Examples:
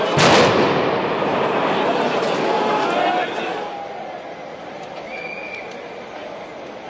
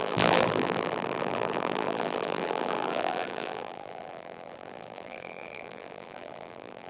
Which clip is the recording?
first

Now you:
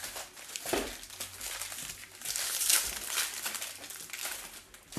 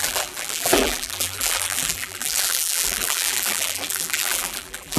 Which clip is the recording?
first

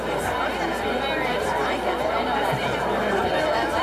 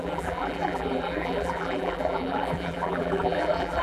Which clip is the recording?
first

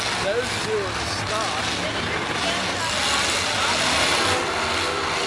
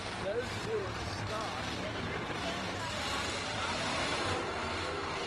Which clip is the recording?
first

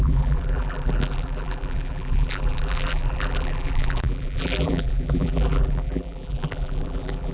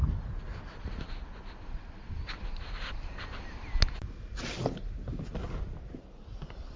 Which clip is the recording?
second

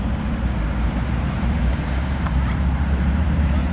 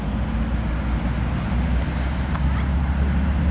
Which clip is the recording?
second